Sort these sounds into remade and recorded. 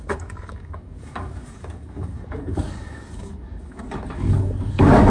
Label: remade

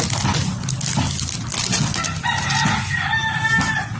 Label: recorded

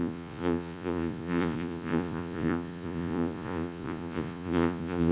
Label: remade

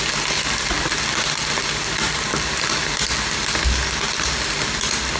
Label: recorded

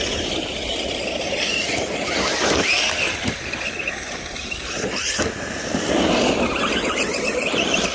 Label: recorded